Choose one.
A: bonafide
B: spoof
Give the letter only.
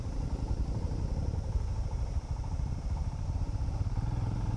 B